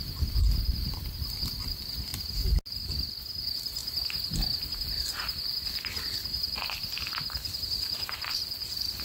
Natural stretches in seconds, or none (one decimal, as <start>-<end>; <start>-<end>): 2.1-3.2; 3.8-5.0

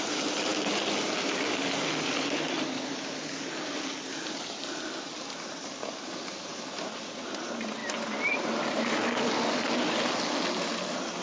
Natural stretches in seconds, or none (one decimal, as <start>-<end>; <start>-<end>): 0.0-11.2